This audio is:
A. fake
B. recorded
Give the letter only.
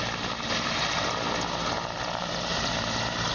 B